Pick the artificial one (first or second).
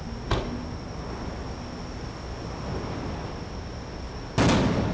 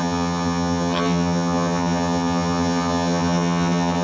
second